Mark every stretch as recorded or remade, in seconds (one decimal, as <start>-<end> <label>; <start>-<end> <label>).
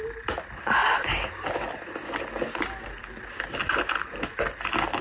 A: 0.0-5.0 recorded